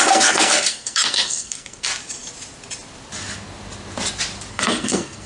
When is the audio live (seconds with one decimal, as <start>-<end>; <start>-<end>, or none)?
1.9-4.5